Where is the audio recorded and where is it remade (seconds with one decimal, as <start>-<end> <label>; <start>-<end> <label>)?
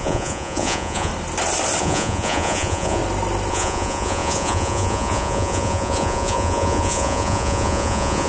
0.0-1.1 remade; 1.1-1.8 recorded; 1.8-3.0 remade; 3.0-3.5 recorded; 3.5-8.3 remade